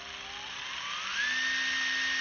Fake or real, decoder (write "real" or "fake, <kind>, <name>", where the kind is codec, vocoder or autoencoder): real